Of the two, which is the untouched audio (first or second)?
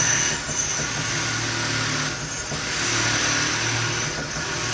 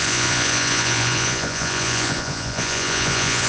first